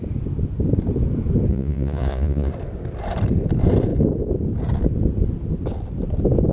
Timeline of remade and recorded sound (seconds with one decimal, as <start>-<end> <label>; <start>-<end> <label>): 0.0-1.5 recorded; 1.5-2.5 remade; 2.5-6.5 recorded